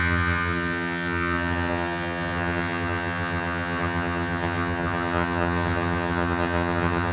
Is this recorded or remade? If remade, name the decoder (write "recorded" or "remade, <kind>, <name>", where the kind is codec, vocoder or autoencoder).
remade, vocoder, HiFi-GAN